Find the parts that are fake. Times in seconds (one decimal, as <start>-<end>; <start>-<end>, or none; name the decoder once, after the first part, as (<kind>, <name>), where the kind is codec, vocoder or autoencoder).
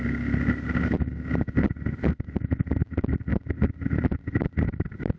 none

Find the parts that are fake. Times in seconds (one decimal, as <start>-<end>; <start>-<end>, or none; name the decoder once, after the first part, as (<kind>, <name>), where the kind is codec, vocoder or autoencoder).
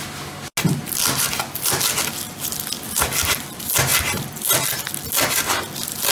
none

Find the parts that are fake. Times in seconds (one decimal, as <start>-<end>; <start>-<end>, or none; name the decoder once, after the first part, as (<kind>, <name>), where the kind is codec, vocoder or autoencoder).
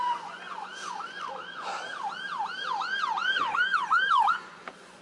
0.0-1.7 (vocoder, Vocos); 2.7-5.0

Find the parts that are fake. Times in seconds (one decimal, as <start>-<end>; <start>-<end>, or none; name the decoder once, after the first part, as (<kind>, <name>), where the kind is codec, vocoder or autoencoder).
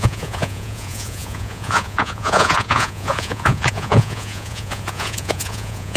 0.0-6.0 (vocoder, Vocos)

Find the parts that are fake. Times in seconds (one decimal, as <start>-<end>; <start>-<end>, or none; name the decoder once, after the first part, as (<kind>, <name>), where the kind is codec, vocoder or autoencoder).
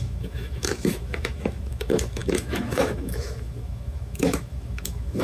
0.0-5.2 (autoencoder, DAC-VAE)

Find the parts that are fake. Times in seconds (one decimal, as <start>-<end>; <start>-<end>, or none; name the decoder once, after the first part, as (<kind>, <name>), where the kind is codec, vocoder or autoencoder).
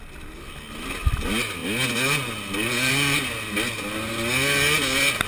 none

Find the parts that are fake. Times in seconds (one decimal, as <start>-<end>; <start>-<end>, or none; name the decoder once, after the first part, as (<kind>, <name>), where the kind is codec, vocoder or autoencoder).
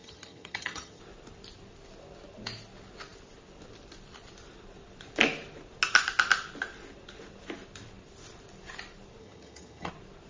0.0-1.0 (vocoder, HiFi-GAN); 9.2-9.9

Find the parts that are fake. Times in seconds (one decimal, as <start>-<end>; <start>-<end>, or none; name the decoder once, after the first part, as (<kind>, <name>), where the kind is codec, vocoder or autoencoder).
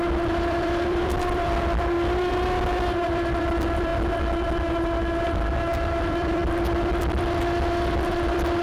0.0-3.9 (vocoder, BigVGAN v2); 6.0-8.6